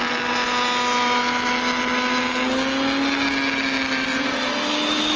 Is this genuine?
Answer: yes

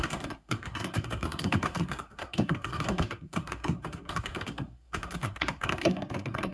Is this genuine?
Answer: no